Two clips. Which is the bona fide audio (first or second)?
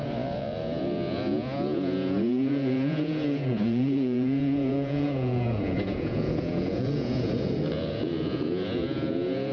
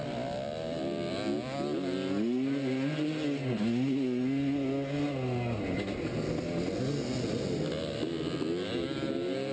second